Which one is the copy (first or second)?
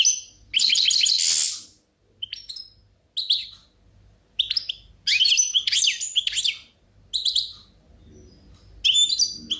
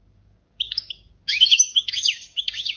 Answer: second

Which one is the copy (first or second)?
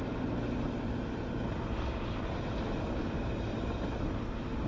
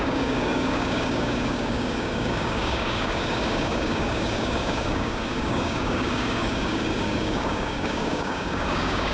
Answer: second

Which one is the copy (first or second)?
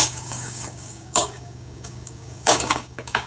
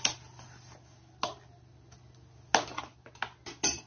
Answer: first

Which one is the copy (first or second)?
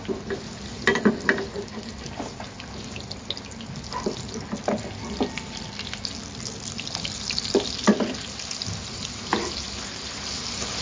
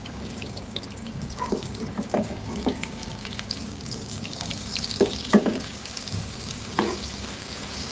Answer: second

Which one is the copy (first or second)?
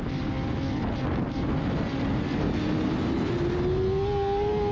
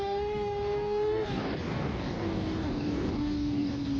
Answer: second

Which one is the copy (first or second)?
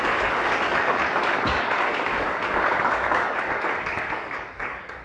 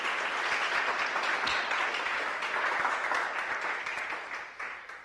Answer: first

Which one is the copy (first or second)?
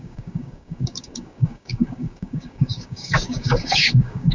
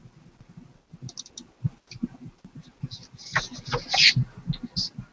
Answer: first